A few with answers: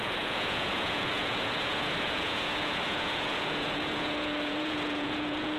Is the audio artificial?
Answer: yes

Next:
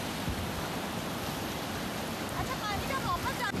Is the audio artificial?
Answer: no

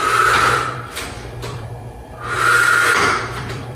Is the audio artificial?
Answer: yes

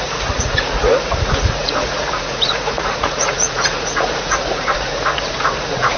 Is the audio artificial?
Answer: yes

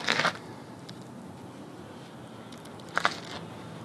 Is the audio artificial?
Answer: no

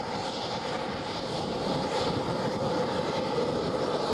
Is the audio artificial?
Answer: no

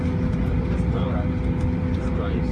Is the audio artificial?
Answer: no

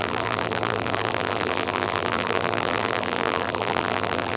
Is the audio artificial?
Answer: yes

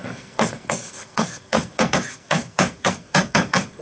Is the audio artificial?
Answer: yes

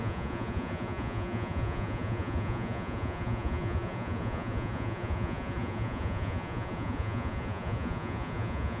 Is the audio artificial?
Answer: yes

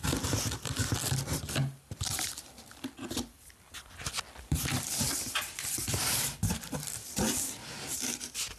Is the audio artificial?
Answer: yes